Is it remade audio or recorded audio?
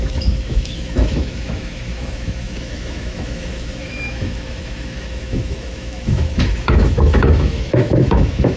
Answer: remade